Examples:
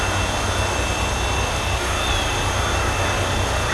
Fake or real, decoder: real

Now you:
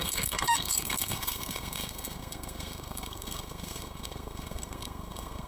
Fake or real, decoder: fake, codec, SNAC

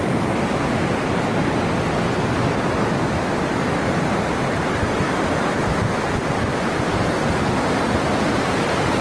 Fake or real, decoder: real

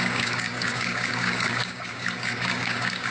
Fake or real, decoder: fake, codec, DAC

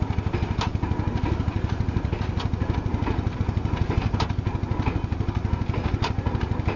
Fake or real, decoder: real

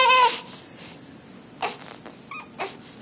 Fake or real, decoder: real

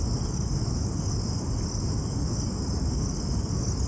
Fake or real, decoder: real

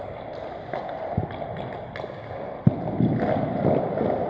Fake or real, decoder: real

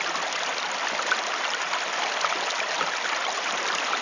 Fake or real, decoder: real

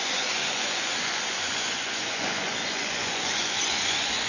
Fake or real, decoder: fake, vocoder, Vocos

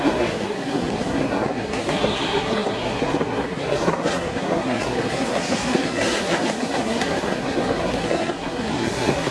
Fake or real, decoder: fake, codec, SNAC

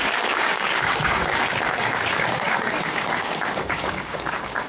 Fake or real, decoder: fake, codec, DAC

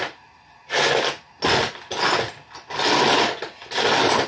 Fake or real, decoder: real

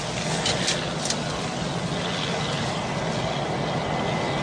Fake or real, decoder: real